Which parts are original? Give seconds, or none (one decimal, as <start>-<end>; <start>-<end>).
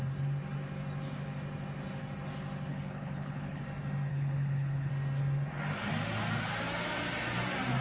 0.0-2.7; 3.6-4.1; 4.9-7.8